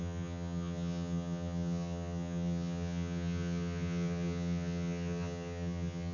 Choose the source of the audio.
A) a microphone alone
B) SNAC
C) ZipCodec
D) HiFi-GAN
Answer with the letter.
D